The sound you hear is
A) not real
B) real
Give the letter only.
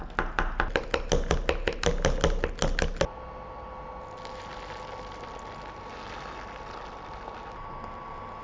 B